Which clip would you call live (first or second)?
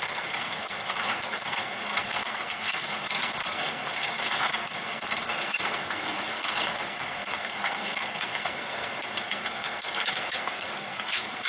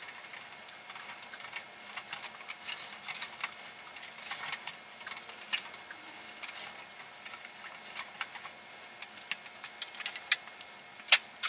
second